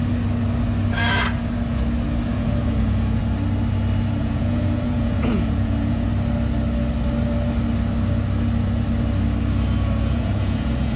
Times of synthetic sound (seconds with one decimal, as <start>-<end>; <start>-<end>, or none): 2.3-3.2; 4.2-6.1; 10.1-11.0